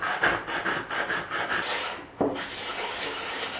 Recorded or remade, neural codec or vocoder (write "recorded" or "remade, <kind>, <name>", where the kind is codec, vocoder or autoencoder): recorded